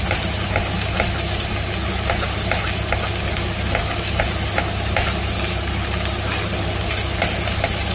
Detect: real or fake real